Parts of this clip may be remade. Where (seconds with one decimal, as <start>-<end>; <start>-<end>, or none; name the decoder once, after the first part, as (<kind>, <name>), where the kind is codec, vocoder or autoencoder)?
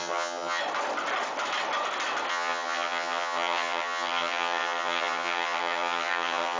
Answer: 0.0-0.6 (vocoder, HiFi-GAN); 2.3-6.6